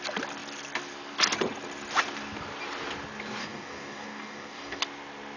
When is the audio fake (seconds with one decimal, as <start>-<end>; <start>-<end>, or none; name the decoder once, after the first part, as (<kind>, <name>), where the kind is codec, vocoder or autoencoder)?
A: 3.4-4.8 (codec, DAC)